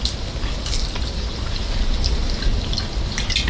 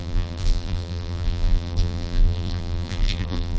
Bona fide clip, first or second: first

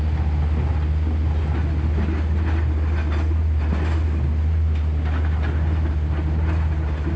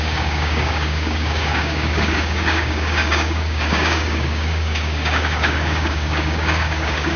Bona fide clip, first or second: first